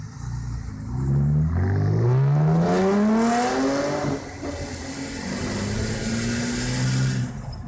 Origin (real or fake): real